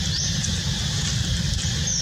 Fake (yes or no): no